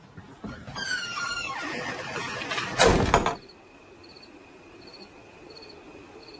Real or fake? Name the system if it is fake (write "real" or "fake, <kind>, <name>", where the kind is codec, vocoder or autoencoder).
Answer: real